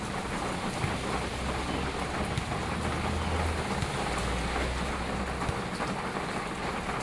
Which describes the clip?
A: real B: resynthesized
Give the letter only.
A